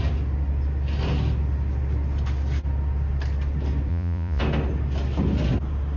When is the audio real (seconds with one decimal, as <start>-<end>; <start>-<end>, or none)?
0.0-3.9; 4.4-6.0